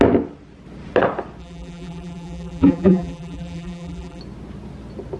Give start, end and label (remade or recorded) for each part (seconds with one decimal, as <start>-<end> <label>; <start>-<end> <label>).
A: 0.0-1.4 recorded; 1.4-4.2 remade; 4.2-5.2 recorded